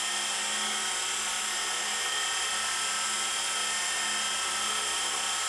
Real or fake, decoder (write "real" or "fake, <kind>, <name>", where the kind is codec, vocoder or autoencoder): real